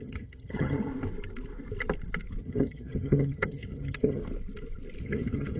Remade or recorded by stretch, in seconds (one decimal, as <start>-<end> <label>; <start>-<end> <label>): 0.0-0.9 remade; 0.9-2.4 recorded; 2.4-4.2 remade; 4.2-5.0 recorded; 5.0-5.6 remade

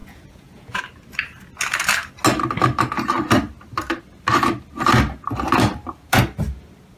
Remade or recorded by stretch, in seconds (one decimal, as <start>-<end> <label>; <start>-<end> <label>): 0.0-0.8 remade; 0.8-7.0 recorded

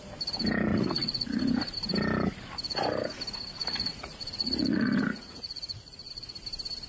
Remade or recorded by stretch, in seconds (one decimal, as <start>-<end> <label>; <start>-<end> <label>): 0.0-0.7 recorded; 0.7-1.4 remade; 1.4-3.6 recorded; 3.6-6.1 remade; 6.1-6.9 recorded

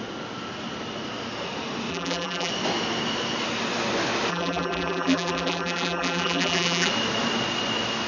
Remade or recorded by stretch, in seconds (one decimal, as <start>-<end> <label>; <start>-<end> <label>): 0.0-1.9 recorded; 1.9-2.5 remade; 2.5-4.3 recorded; 4.3-6.9 remade; 6.9-8.1 recorded

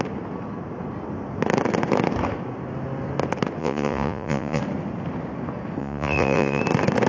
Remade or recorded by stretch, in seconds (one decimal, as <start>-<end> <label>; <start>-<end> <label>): 0.0-3.6 recorded; 3.6-4.6 remade; 4.6-5.8 recorded; 5.8-6.6 remade; 6.6-7.1 recorded

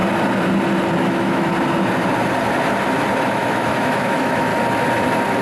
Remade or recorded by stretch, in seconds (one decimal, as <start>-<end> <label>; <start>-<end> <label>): 0.0-1.0 recorded; 1.0-1.5 remade; 1.5-3.2 recorded; 3.2-4.5 remade; 4.5-5.4 recorded